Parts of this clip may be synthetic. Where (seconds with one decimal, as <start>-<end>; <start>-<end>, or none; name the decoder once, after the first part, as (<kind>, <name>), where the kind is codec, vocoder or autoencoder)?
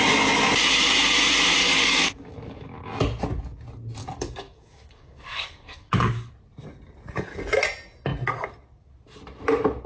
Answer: 1.6-2.9 (codec, DAC); 4.0-6.3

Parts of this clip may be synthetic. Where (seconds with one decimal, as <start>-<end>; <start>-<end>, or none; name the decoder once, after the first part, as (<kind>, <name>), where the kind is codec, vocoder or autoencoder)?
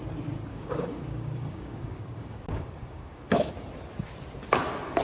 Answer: 0.5-3.5 (codec, DAC)